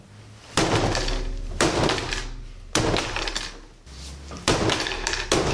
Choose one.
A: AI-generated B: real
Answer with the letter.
B